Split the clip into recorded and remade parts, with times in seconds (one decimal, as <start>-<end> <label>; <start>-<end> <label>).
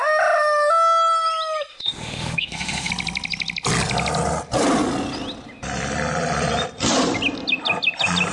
0.0-1.7 recorded; 1.7-2.9 remade; 2.9-8.3 recorded